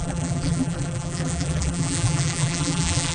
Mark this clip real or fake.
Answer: fake